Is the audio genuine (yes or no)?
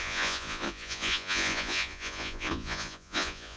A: no